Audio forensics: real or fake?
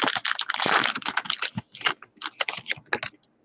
real